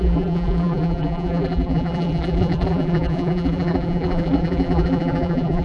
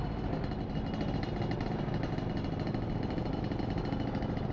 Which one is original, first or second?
second